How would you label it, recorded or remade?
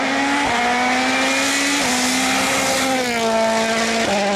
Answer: recorded